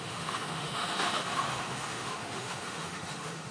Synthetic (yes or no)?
yes